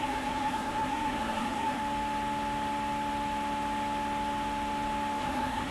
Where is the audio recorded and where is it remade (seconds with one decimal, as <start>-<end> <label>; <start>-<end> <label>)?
0.0-1.8 remade; 1.8-5.2 recorded; 5.2-5.7 remade